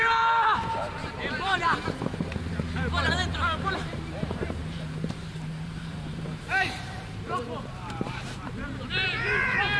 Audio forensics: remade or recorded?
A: remade